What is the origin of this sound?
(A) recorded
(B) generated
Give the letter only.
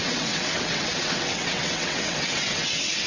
B